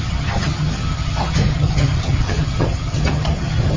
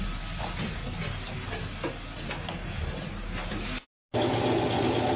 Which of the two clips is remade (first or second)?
first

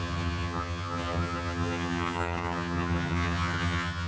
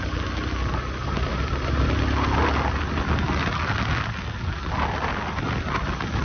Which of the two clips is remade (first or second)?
first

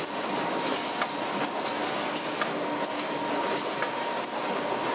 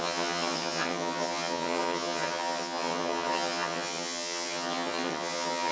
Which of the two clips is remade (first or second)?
second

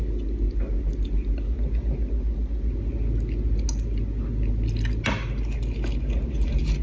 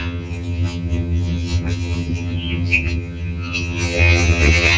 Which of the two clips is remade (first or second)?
second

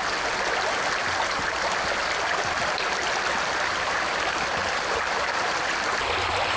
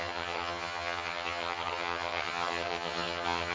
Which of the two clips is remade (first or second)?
second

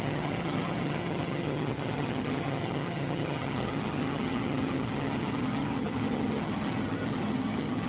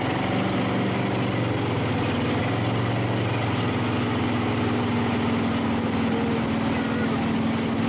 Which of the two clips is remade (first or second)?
first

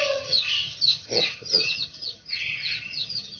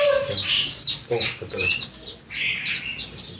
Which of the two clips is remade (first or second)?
first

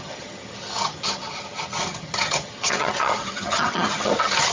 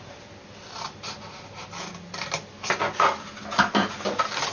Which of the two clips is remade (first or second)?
first